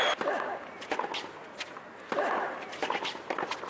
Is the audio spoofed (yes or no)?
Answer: no